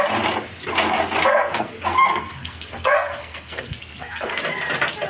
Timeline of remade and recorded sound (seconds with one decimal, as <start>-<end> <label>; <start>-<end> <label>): 0.0-1.3 recorded; 1.3-4.4 remade; 4.4-5.1 recorded